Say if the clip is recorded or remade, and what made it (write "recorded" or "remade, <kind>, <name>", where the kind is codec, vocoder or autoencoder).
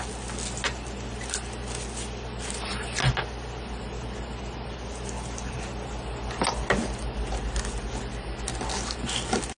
recorded